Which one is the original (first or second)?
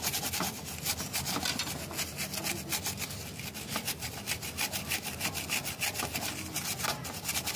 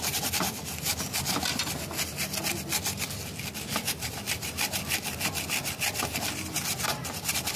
first